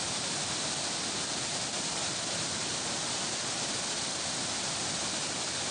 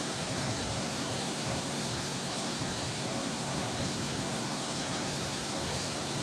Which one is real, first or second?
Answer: first